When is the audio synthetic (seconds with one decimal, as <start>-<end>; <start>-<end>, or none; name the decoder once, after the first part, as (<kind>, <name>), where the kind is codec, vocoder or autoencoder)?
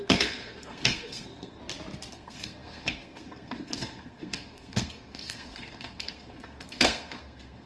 0.0-1.6 (codec, SNAC); 2.1-7.7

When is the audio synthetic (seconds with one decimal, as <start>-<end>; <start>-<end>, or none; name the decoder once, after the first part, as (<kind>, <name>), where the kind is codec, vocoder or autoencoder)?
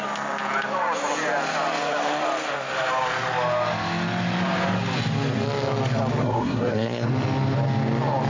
6.2-7.1 (codec, SNAC)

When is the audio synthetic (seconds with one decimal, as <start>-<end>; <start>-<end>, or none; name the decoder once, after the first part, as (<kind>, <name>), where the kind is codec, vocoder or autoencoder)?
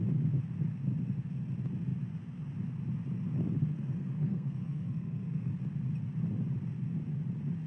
3.7-5.5 (codec, SNAC)